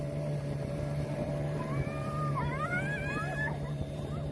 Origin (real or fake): fake